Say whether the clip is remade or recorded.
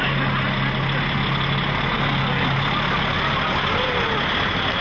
recorded